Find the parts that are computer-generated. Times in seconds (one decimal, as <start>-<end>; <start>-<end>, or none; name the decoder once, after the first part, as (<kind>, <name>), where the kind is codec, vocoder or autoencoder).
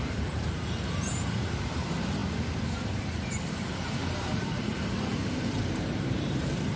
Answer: 0.0-6.8 (vocoder, BigVGAN v2)